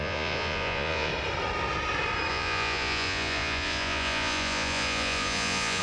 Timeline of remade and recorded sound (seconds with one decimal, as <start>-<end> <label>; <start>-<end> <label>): 0.0-1.1 remade; 1.1-2.3 recorded; 2.3-5.8 remade